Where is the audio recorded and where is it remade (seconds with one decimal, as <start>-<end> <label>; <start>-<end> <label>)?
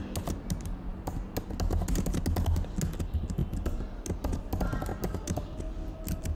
0.0-6.3 recorded